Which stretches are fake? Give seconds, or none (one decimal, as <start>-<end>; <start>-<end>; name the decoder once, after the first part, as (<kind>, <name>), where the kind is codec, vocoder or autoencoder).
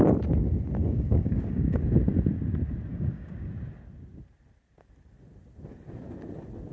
0.8-1.8 (codec, DAC); 2.9-3.5